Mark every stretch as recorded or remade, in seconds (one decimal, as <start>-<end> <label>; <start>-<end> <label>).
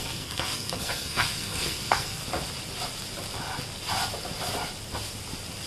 0.0-2.2 remade; 2.2-5.7 recorded